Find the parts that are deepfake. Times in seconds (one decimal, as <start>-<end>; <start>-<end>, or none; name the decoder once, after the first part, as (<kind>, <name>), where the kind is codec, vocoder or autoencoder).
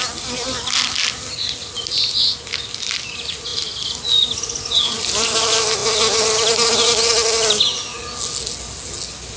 none